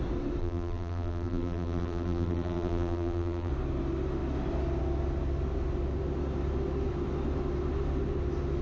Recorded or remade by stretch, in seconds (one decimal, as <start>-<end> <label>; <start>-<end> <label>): 0.0-0.4 recorded; 0.4-3.5 remade; 3.5-8.6 recorded